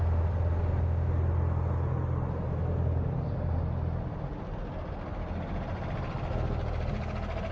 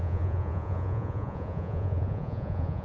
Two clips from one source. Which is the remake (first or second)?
second